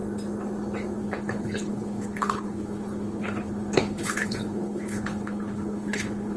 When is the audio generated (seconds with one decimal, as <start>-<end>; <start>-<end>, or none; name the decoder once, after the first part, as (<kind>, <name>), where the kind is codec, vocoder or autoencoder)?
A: 1.0-6.4 (codec, HILCodec)